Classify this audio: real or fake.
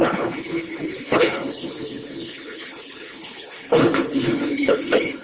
fake